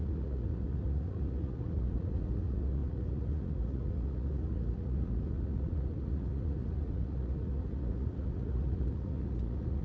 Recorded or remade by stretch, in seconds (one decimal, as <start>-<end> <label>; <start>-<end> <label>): 0.0-9.8 remade